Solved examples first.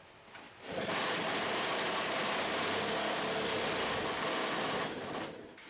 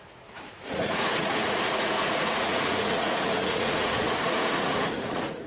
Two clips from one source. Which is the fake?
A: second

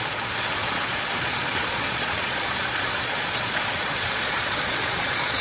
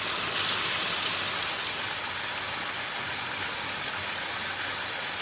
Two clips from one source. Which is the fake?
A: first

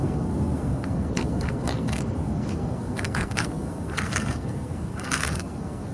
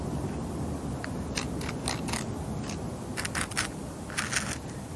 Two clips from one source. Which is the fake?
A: first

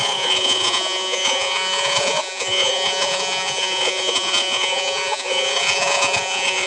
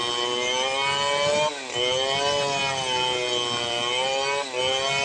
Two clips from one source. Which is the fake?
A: first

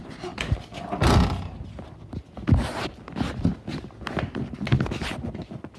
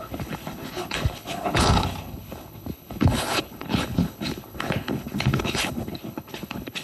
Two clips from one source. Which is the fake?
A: second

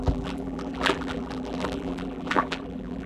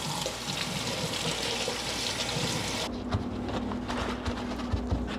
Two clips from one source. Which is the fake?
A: first